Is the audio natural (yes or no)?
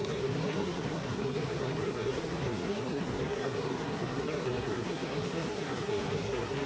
no